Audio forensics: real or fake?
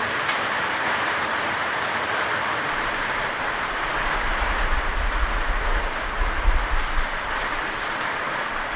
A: real